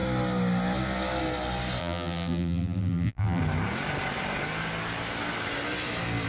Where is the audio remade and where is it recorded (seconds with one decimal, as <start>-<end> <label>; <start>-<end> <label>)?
0.0-1.8 recorded; 1.8-3.4 remade; 3.4-6.3 recorded